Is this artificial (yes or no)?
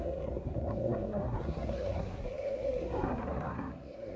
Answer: yes